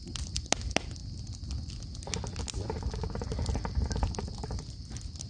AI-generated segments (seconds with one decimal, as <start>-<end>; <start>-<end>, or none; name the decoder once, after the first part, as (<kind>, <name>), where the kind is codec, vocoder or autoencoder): none